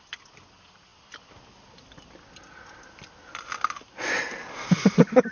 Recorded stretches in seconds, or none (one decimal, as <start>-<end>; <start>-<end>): 0.0-5.3